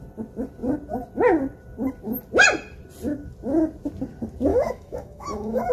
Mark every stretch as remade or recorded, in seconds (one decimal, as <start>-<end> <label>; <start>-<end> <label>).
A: 0.0-4.5 recorded; 4.5-5.7 remade